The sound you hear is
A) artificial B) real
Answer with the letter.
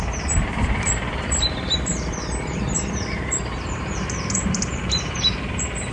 A